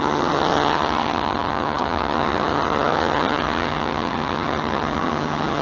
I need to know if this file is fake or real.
fake